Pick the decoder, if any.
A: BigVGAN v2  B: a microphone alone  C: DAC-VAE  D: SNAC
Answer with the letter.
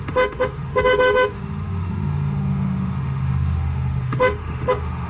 C